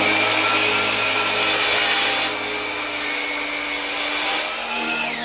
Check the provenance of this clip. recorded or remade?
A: recorded